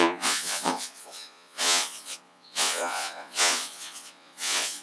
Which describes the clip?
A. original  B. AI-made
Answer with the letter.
B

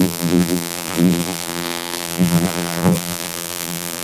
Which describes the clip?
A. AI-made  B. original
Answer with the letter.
A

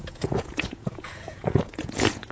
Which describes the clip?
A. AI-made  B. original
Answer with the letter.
A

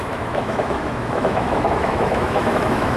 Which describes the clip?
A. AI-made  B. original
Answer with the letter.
A